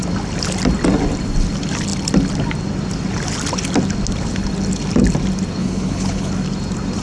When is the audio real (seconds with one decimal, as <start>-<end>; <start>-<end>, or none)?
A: 0.0-5.6; 6.3-7.0